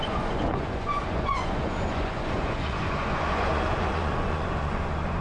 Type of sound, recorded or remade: remade